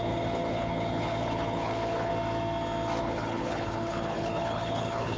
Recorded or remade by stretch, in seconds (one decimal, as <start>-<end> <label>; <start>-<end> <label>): 0.0-2.1 remade; 2.1-3.0 recorded; 3.0-5.2 remade